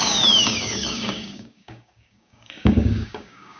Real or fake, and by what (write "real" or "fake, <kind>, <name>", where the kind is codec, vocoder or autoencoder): fake, codec, DAC